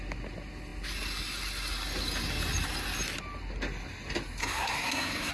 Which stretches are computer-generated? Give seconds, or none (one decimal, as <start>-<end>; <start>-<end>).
4.4-5.3